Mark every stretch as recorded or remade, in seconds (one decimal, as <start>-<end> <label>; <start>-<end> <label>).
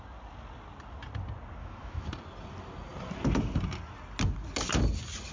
0.0-1.6 recorded; 1.6-2.1 remade; 2.1-5.3 recorded